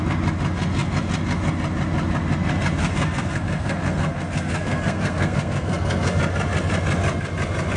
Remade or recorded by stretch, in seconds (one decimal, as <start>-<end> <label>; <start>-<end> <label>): 0.0-2.8 recorded; 2.8-6.2 remade; 6.2-7.8 recorded